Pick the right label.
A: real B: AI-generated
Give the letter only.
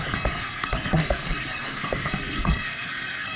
B